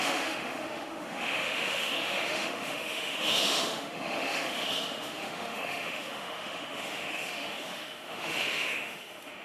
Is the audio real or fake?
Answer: fake